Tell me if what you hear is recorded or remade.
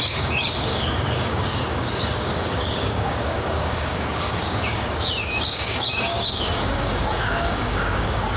remade